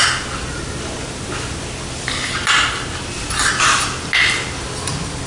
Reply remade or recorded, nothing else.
recorded